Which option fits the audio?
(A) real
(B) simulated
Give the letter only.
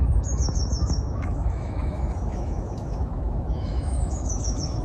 B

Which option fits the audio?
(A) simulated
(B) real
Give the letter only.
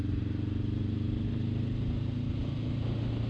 B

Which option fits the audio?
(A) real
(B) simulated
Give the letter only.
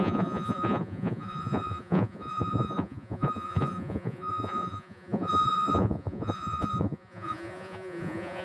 B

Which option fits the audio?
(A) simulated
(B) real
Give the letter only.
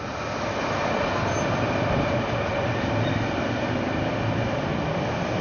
B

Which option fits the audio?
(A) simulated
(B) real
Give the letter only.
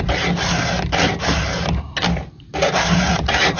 B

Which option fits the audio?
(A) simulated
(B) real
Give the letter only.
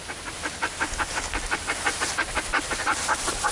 B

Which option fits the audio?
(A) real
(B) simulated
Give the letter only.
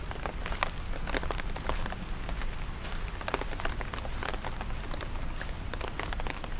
A